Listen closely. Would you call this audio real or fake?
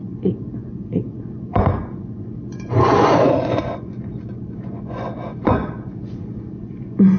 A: fake